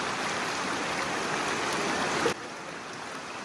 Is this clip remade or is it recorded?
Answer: recorded